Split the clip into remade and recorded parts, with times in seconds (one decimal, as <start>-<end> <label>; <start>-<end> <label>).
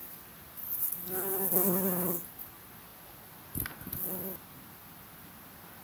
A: 0.0-5.8 recorded